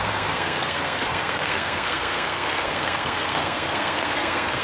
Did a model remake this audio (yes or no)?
yes